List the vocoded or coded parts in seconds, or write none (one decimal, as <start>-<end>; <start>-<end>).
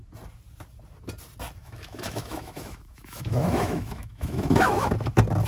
1.6-4.9